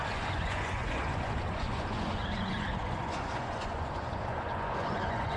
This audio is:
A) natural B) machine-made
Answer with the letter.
B